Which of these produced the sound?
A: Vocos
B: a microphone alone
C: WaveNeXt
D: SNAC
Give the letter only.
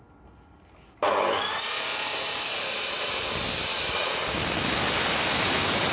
B